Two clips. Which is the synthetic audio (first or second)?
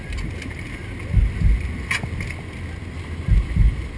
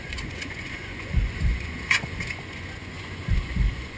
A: second